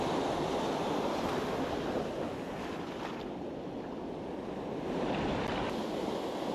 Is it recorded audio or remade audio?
recorded